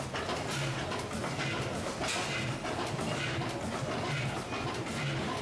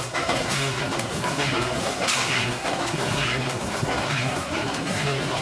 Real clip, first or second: first